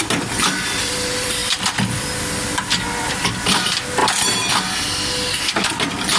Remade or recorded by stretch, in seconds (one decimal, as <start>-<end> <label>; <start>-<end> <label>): 0.0-0.8 recorded; 0.8-4.0 remade; 4.0-5.4 recorded; 5.4-6.2 remade